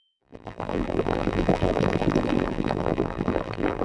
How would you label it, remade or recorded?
remade